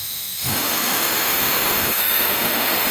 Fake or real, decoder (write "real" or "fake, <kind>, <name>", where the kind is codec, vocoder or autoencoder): fake, autoencoder, DAC-VAE